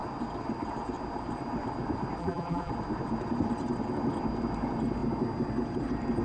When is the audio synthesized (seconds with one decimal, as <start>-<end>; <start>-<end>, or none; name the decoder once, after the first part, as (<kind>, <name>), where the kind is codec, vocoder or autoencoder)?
2.2-2.7 (vocoder, BigVGAN v2)